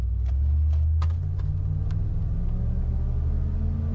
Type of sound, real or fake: real